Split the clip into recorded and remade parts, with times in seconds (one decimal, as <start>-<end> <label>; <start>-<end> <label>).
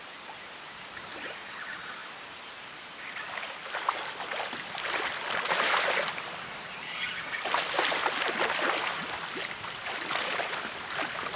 0.0-2.0 recorded; 2.0-5.8 remade; 5.8-9.0 recorded; 9.0-10.8 remade; 10.8-11.4 recorded